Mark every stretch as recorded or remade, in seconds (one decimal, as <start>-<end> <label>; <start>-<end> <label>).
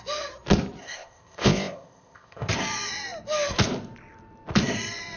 0.0-0.8 recorded; 0.8-2.5 remade; 2.5-5.2 recorded